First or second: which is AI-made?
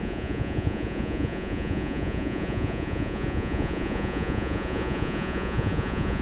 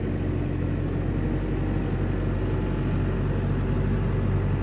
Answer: first